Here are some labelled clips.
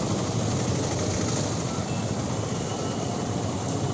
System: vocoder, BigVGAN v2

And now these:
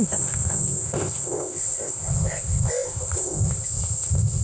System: codec, ZipCodec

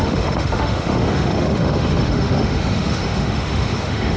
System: autoencoder, DAC-VAE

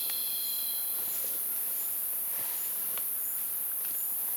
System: none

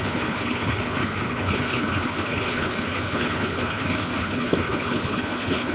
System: codec, HILCodec